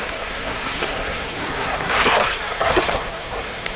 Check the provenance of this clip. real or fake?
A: fake